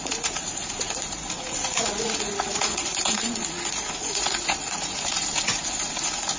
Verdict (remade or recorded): remade